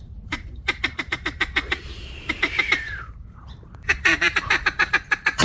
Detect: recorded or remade remade